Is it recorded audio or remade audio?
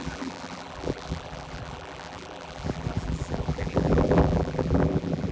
remade